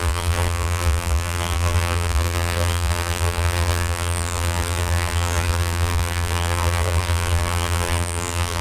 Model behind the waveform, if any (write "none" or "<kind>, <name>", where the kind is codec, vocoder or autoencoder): vocoder, BigVGAN v2